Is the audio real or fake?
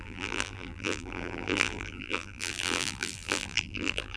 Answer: fake